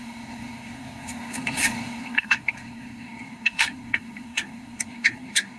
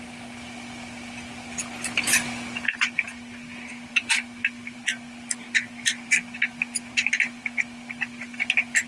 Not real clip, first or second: first